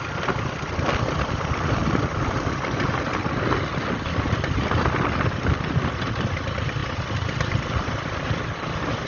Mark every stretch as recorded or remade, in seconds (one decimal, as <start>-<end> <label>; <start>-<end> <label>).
0.0-9.1 recorded